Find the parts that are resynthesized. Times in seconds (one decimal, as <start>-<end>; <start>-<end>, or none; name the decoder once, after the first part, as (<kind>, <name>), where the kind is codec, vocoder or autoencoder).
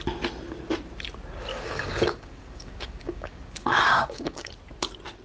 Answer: 1.5-4.5 (codec, DAC)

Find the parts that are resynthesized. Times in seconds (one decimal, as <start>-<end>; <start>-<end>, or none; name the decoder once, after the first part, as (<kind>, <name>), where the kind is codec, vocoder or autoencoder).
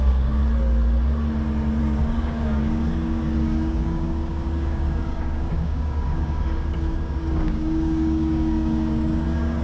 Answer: 0.0-0.4 (codec, DAC); 1.8-9.6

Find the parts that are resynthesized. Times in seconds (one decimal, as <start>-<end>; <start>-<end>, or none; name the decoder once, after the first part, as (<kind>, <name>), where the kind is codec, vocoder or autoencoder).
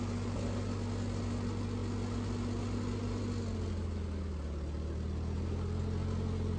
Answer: none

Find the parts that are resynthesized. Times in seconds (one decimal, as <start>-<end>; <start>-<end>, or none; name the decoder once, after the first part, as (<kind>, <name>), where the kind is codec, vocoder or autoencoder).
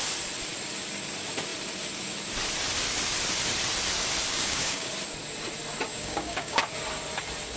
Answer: 4.3-4.9 (codec, DAC); 5.9-6.6